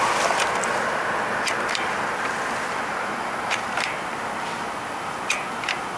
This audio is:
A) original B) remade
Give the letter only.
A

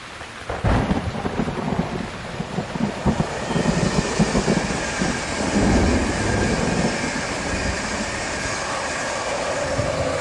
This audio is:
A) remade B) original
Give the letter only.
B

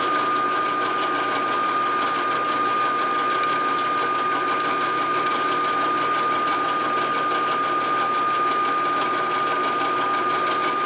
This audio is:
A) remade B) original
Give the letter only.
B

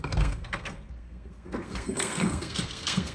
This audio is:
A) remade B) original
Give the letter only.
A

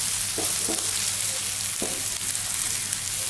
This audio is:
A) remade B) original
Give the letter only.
B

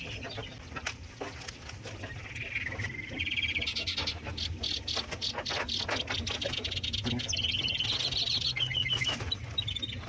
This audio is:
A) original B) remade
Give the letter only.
A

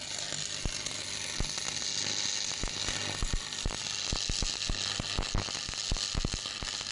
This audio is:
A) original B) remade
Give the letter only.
A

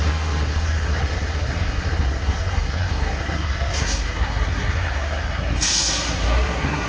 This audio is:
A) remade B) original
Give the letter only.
A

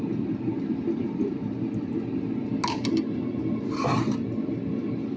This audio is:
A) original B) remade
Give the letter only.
A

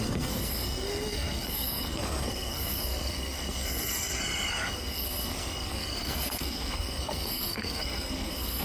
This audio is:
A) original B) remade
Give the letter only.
B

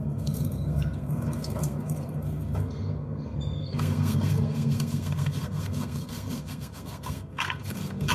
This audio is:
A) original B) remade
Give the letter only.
B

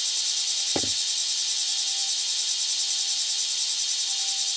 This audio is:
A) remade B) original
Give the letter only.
B